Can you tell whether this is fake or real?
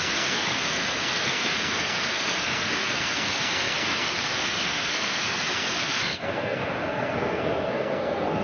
fake